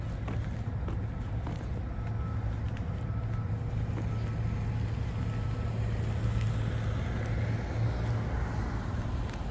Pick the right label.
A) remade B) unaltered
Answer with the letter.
B